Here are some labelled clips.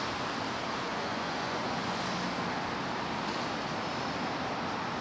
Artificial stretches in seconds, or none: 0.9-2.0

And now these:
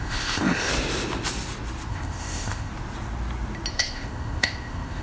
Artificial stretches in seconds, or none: 0.0-0.7; 1.9-2.7; 3.7-5.0

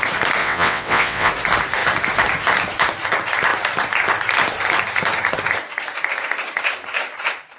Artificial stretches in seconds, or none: 0.4-1.3

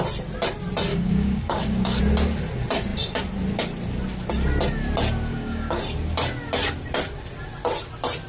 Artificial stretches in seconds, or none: 0.9-2.0; 5.3-5.8

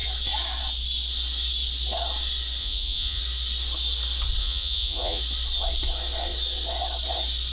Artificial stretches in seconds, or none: 2.6-3.2; 4.4-5.2

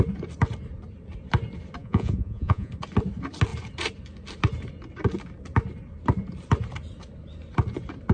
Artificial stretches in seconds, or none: 1.8-2.7

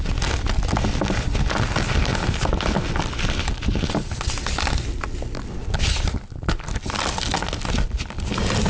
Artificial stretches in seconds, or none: none

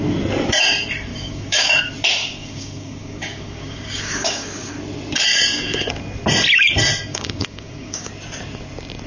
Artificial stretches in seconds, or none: 1.1-1.8; 2.2-4.7; 5.3-5.9; 7.1-8.1